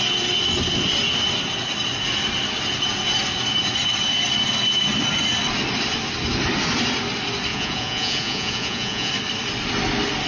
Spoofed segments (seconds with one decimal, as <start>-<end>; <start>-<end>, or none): 7.5-9.1